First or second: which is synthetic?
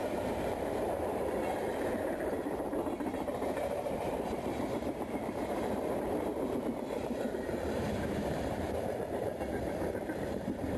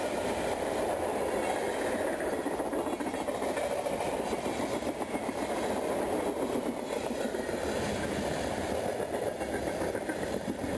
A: first